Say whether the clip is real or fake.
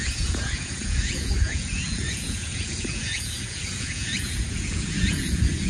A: fake